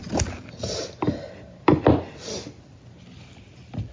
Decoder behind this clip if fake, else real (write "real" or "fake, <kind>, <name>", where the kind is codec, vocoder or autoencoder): real